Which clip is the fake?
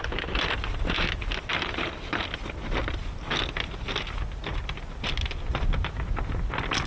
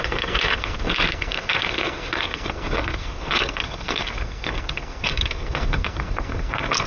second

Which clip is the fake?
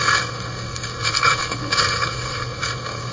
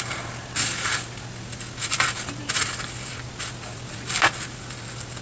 first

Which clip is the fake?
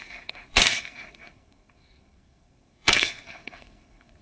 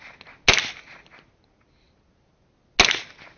first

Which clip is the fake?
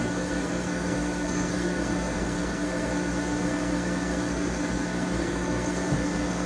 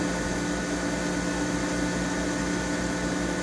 first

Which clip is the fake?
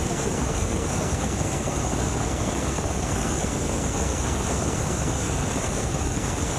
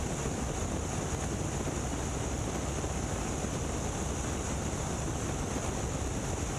first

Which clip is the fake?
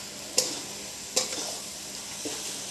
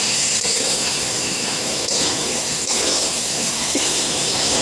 second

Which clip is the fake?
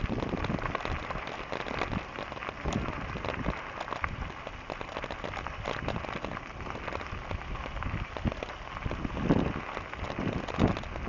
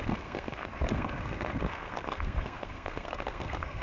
second